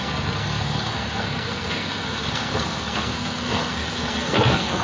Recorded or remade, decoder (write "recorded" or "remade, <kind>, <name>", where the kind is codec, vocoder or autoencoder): remade, codec, SNAC